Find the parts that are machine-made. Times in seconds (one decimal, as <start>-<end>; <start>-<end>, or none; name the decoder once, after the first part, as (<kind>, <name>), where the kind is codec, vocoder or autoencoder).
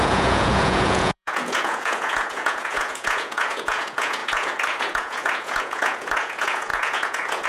0.0-7.5 (vocoder, Vocos)